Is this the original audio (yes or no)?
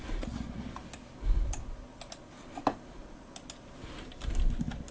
yes